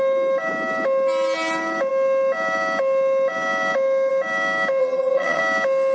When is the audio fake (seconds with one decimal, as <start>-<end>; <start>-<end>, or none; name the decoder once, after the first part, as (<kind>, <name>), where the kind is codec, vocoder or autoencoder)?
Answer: 4.8-5.4 (vocoder, HiFi-GAN)